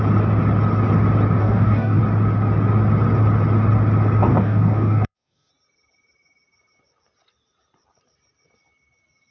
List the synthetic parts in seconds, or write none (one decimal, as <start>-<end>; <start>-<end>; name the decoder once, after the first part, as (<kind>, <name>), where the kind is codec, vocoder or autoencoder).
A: 1.4-2.0 (codec, DAC); 4.3-5.5